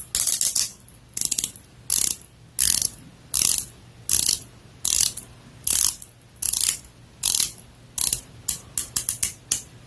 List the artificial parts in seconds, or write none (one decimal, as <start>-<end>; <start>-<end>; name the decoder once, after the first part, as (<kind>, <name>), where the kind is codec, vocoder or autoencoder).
0.7-1.7 (vocoder, BigVGAN v2)